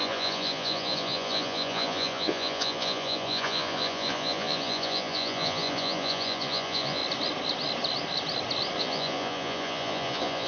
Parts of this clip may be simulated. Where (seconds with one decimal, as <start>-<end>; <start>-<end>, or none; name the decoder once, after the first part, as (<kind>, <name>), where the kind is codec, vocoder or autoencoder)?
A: 0.0-7.0 (vocoder, Vocos); 8.8-10.5